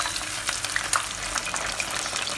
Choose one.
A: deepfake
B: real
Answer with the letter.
B